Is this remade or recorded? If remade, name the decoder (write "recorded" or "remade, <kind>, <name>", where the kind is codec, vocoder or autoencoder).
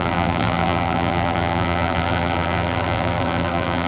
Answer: remade, vocoder, BigVGAN v2